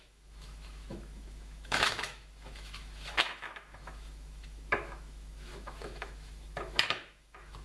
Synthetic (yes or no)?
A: yes